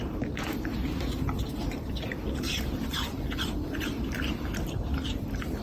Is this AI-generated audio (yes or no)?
yes